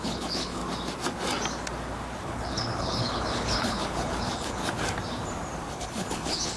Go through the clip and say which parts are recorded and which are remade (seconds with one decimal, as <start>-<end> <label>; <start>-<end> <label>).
0.0-0.6 remade; 0.6-2.2 recorded; 2.2-4.6 remade; 4.6-5.7 recorded; 5.7-6.6 remade